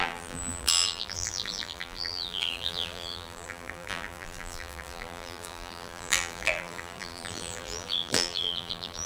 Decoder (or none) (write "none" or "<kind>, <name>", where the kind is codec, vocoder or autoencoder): vocoder, BigVGAN v2